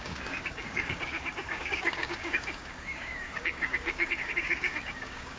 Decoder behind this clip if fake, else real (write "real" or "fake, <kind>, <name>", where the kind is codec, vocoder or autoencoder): fake, codec, DAC